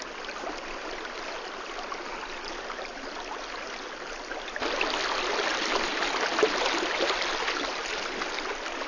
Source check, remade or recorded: recorded